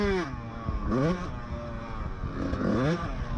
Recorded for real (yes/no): yes